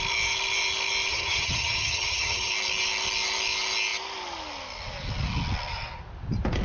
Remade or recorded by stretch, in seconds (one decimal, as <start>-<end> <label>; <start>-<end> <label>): 0.0-1.1 recorded; 1.1-2.5 remade; 2.5-6.6 recorded